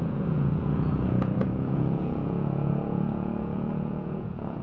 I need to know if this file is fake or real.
fake